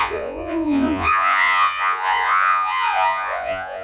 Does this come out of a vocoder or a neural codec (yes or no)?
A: yes